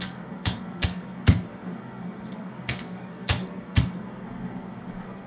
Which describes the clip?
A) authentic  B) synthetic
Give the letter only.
B